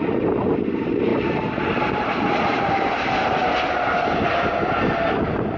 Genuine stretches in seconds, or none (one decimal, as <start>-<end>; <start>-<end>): 0.0-5.6